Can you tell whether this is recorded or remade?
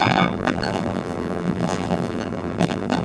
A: remade